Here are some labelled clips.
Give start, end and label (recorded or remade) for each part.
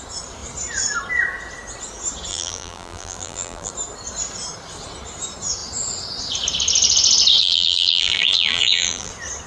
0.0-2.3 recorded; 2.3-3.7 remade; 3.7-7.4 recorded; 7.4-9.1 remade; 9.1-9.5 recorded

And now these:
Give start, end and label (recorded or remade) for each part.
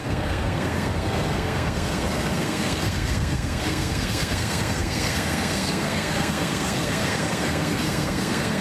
0.0-8.6 remade